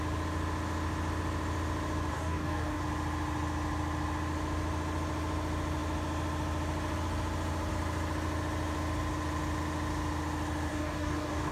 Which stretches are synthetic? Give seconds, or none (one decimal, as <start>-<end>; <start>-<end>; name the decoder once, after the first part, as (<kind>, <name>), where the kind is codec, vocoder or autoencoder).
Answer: 2.1-2.8 (codec, DAC); 10.7-11.5